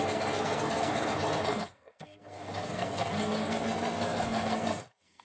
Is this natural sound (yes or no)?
no